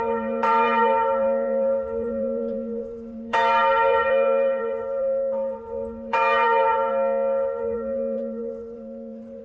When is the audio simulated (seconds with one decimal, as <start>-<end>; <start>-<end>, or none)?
0.0-6.9; 7.6-9.4